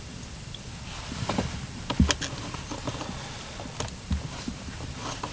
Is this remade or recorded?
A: recorded